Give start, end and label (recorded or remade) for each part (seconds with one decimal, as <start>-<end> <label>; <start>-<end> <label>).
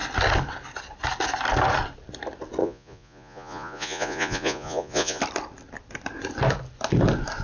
0.0-2.6 recorded; 2.6-5.2 remade; 5.2-7.4 recorded